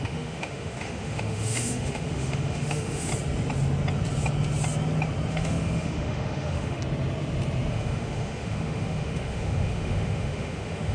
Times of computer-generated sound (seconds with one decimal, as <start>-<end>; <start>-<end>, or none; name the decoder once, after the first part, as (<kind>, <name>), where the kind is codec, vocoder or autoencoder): 0.0-3.1 (autoencoder, DAC-VAE); 5.3-6.8; 7.7-10.9